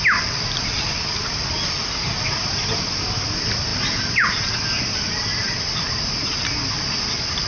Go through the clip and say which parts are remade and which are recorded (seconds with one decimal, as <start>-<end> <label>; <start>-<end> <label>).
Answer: 0.0-7.5 recorded